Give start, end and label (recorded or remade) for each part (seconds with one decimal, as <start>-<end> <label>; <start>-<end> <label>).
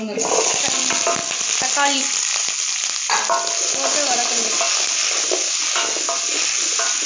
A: 0.0-7.1 recorded